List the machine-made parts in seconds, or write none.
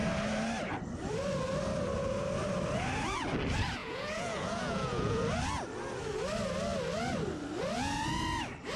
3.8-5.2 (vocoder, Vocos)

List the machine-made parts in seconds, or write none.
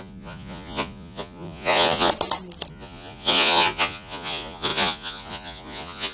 0.0-2.1 (vocoder, Vocos); 2.7-6.1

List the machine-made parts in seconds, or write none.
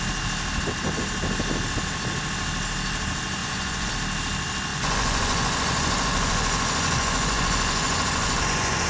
3.4-3.9 (vocoder, Vocos); 4.7-8.9